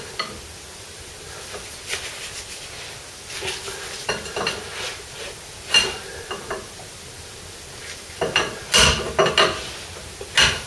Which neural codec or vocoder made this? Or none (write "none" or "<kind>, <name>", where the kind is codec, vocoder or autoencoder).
none